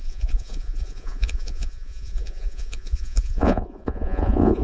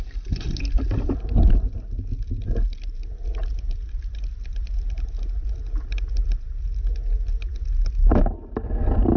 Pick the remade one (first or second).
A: first